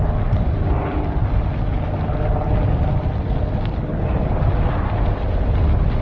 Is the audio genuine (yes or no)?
yes